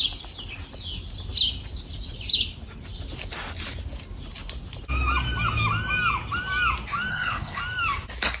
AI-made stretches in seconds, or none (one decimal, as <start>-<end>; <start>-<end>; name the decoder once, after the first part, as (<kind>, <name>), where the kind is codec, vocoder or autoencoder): 7.1-7.6 (codec, HILCodec)